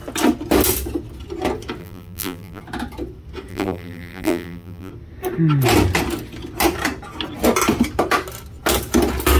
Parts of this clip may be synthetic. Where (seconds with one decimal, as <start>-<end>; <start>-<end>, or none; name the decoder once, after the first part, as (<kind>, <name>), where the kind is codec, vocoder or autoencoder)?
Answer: 1.8-2.6 (vocoder, BigVGAN v2); 3.5-4.9